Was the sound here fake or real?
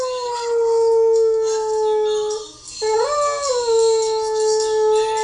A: real